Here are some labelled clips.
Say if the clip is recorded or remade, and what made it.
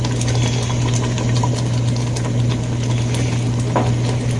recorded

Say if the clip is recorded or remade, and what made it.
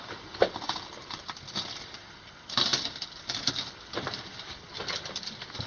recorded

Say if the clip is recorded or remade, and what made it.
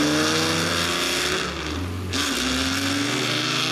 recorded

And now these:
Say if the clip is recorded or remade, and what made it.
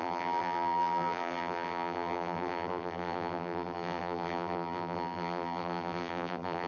remade, vocoder, BigVGAN v2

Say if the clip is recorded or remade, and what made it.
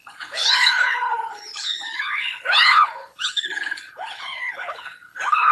remade, codec, HILCodec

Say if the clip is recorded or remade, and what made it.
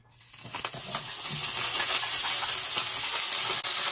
recorded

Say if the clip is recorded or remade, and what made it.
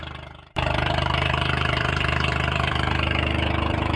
remade, vocoder, BigVGAN v2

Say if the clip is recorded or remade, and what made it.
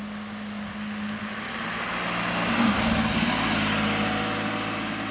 recorded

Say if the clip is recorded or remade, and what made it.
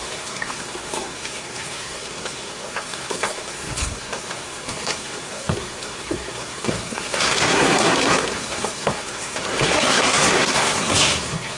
remade, codec, SNAC